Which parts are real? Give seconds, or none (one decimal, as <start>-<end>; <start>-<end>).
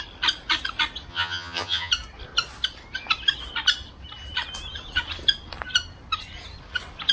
0.0-1.1; 1.9-7.1